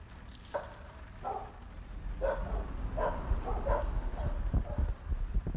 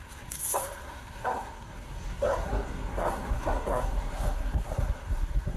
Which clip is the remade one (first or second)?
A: second